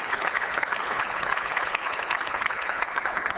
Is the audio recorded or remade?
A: remade